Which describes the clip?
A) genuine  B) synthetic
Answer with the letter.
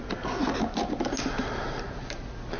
A